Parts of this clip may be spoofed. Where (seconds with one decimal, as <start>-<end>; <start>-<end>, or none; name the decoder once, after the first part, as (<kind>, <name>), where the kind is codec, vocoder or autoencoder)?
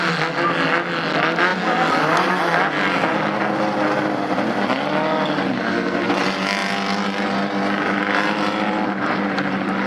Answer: 5.5-6.1 (codec, SNAC)